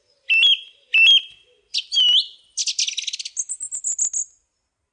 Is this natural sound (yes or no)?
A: yes